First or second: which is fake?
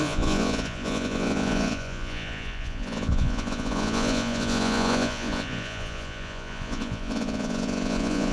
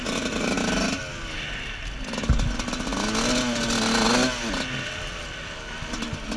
first